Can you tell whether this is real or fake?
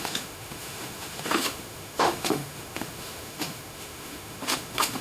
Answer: fake